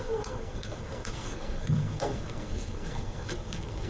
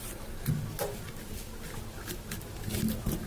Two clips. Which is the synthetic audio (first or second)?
first